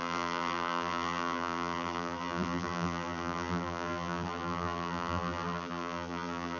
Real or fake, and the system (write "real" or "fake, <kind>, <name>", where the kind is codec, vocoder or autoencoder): fake, vocoder, BigVGAN v2